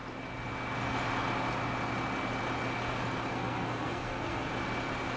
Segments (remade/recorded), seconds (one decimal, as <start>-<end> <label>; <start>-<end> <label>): 0.0-3.3 recorded; 3.3-4.5 remade; 4.5-5.2 recorded